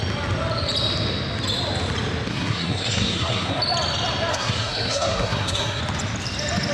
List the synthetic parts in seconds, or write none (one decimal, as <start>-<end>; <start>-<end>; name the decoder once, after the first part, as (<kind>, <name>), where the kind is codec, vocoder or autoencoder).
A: 2.3-3.6 (codec, SNAC); 4.3-5.8